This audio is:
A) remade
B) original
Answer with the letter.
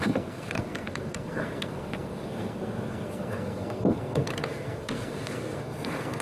A